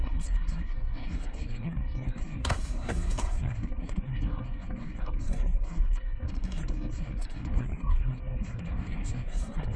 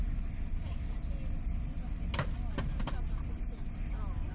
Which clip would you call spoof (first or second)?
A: first